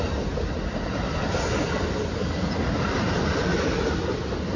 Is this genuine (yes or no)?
yes